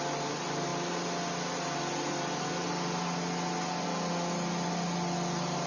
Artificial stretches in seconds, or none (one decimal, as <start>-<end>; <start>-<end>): none